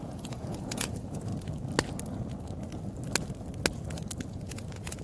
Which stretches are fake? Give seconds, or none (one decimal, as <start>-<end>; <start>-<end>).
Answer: 0.0-1.3; 4.3-5.0